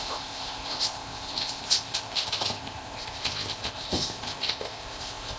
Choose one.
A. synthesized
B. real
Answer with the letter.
A